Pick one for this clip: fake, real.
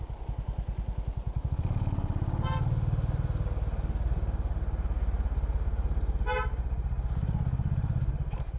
real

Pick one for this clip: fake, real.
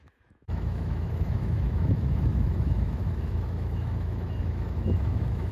fake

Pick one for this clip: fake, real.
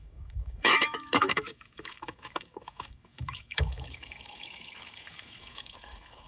fake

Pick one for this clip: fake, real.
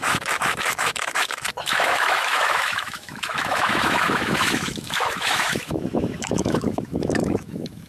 fake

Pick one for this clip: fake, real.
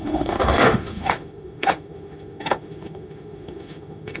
fake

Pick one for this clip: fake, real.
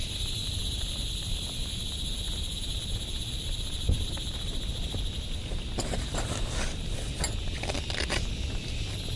real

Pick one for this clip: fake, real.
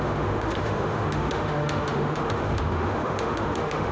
fake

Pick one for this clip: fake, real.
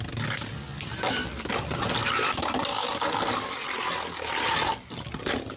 real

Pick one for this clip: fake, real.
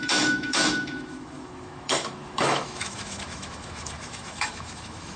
fake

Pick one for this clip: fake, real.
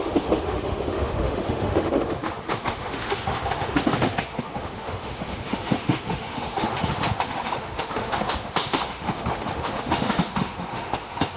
fake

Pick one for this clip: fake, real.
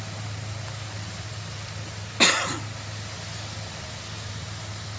real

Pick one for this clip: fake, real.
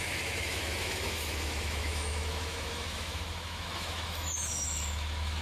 fake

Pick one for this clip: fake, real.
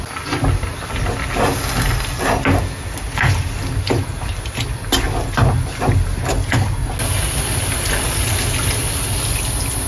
real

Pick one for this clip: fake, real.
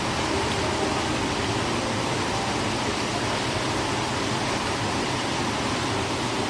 real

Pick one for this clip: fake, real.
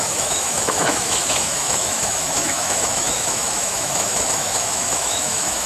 fake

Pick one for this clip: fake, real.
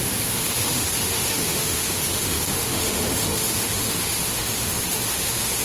fake